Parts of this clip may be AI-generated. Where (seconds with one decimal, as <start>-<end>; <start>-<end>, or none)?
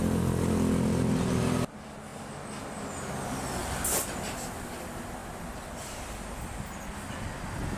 none